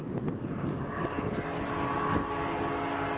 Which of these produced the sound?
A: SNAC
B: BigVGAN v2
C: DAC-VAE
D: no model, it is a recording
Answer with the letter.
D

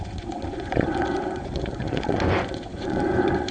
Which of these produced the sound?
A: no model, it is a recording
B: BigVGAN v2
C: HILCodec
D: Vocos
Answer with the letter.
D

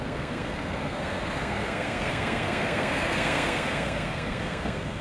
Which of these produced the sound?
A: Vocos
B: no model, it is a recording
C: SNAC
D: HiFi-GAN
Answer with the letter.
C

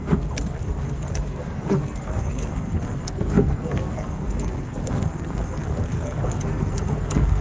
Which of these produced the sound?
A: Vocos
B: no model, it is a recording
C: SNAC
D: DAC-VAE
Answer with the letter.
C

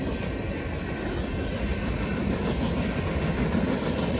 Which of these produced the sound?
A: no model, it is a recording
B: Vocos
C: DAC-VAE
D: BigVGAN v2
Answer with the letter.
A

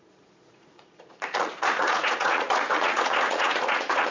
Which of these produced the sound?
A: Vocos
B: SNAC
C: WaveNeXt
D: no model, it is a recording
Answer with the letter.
A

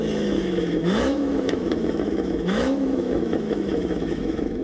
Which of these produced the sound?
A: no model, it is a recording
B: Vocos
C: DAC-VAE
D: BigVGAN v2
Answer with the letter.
C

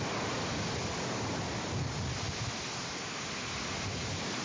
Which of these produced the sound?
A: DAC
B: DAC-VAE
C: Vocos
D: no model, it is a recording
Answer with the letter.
D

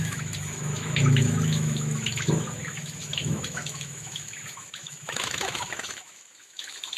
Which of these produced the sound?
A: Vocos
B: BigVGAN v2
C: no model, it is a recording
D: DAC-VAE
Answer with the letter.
D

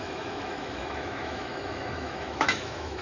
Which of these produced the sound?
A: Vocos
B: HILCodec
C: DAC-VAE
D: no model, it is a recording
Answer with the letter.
C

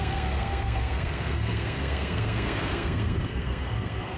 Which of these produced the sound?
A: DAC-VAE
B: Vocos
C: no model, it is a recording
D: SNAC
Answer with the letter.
D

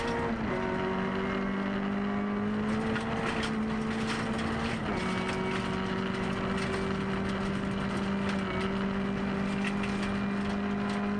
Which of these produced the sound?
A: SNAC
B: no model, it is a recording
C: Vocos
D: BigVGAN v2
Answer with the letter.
B